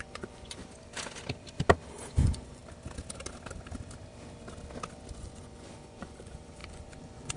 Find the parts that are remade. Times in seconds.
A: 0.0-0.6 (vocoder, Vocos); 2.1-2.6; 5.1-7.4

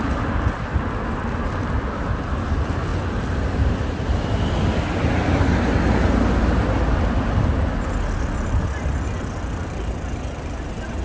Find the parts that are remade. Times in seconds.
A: none